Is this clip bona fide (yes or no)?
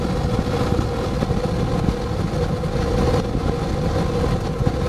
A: yes